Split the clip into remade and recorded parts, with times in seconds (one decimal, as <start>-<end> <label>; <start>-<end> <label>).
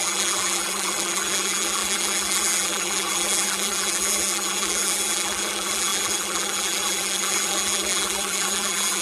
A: 0.0-9.0 remade